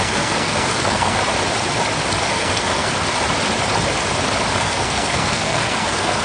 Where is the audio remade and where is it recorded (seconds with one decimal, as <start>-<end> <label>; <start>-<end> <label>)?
0.0-1.2 remade; 1.2-2.2 recorded; 2.2-2.9 remade; 2.9-4.6 recorded; 4.6-6.2 remade